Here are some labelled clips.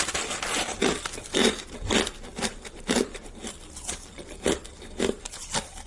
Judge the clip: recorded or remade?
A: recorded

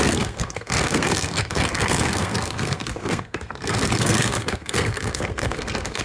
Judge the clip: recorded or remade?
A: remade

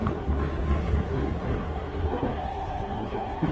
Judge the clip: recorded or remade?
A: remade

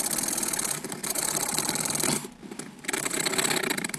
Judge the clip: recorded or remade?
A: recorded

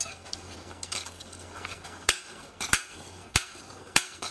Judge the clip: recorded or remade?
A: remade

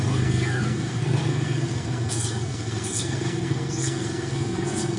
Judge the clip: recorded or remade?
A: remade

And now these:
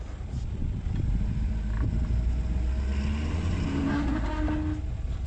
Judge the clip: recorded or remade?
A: recorded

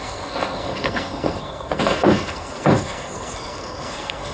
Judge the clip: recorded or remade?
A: remade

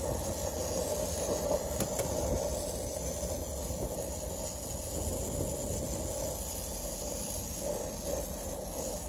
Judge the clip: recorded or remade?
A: recorded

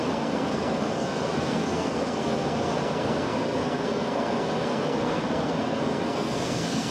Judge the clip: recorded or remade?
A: remade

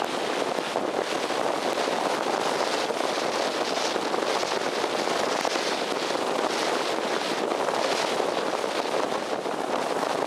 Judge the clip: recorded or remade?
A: recorded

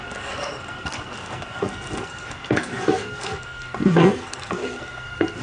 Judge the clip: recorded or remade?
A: remade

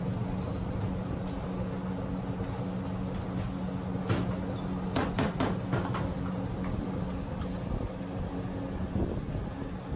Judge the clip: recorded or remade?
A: recorded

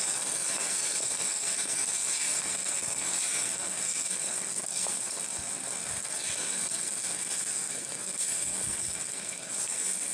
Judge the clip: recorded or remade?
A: remade